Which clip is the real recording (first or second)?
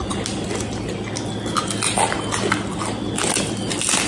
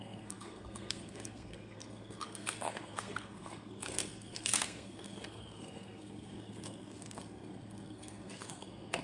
first